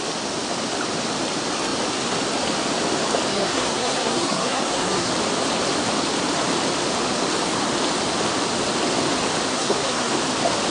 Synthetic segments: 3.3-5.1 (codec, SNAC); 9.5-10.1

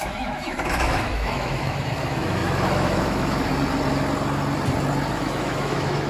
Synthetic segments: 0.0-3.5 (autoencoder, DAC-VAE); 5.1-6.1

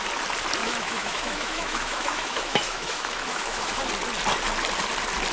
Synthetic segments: 0.6-3.8 (autoencoder, DAC-VAE)

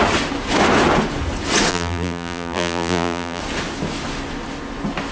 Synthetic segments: 1.7-3.4 (vocoder, BigVGAN v2)

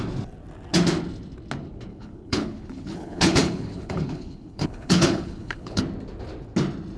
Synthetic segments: 1.9-5.8 (codec, HILCodec)

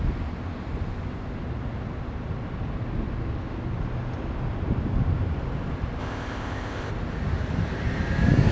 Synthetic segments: 6.0-6.9 (codec, ZipCodec)